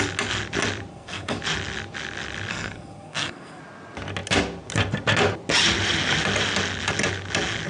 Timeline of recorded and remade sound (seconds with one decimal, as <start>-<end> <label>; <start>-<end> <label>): 0.0-0.9 recorded; 0.9-1.4 remade; 1.4-2.5 recorded; 2.5-3.6 remade; 3.6-7.7 recorded